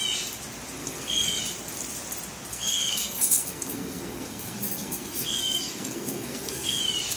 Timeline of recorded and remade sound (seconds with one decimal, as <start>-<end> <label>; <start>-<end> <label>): 0.0-0.8 recorded; 0.8-1.4 remade; 1.4-2.5 recorded; 2.5-6.8 remade; 6.8-7.2 recorded